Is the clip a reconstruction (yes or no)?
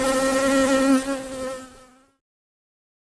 no